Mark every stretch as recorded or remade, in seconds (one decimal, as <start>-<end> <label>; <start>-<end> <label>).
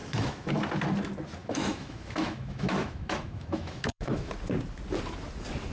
0.0-0.6 remade; 0.6-1.4 recorded; 1.4-4.3 remade; 4.3-5.7 recorded